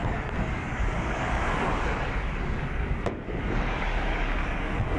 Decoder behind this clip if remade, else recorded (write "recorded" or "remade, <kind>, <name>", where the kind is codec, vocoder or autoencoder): remade, codec, DAC